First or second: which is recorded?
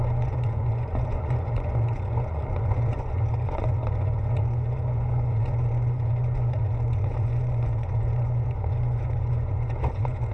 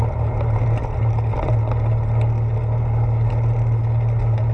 second